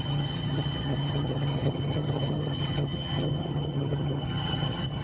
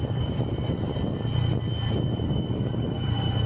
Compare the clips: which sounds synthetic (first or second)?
first